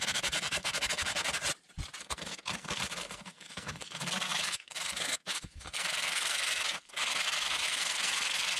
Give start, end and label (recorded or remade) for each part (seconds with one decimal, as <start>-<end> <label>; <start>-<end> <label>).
0.0-1.4 remade; 1.4-2.0 recorded; 2.0-8.6 remade